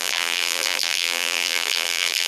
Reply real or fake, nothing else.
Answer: fake